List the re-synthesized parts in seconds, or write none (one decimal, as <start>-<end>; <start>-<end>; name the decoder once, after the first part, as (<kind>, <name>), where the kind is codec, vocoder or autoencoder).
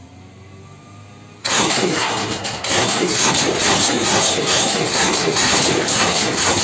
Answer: 1.4-3.3 (codec, SNAC); 3.8-5.5; 5.9-6.6